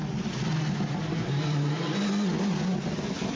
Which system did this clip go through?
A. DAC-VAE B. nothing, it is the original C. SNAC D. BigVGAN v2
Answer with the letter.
B